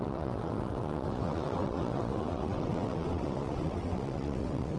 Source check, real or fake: fake